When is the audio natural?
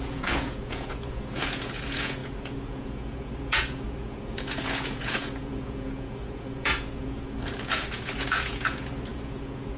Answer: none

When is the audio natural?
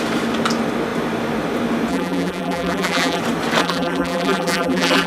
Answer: 0.0-1.9; 3.2-3.6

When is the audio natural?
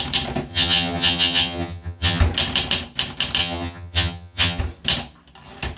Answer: 0.0-0.5; 2.2-3.4; 4.6-5.8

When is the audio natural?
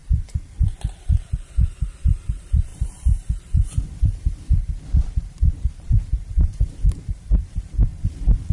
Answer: 7.9-8.5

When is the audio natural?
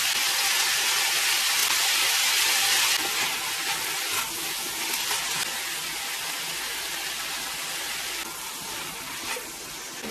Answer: 0.0-10.1